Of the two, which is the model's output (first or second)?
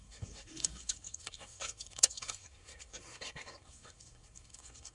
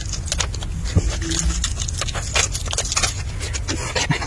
first